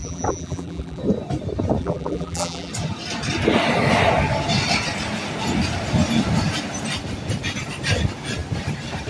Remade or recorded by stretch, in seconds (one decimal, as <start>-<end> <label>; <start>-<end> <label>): 0.0-1.0 remade; 1.0-1.8 recorded; 1.8-2.7 remade; 2.7-9.1 recorded